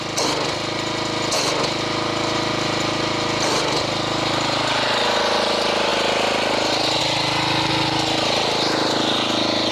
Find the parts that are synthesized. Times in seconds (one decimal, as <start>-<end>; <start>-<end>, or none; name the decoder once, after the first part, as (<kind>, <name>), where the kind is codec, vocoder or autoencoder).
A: none